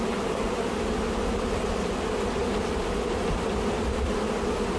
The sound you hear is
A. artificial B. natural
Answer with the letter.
B